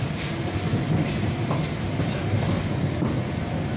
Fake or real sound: real